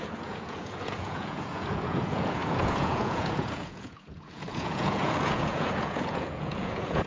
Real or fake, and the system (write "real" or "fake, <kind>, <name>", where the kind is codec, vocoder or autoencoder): fake, vocoder, Vocos